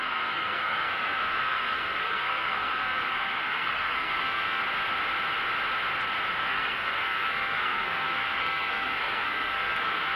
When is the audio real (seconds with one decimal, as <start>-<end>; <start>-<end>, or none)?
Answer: 4.6-6.3